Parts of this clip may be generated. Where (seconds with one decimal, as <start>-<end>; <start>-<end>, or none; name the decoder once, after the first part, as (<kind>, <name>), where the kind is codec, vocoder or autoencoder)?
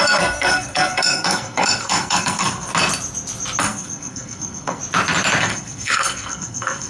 0.0-2.7 (codec, SNAC); 3.6-4.8; 5.4-6.9